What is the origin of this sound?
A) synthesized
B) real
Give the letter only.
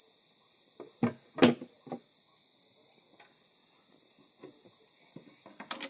B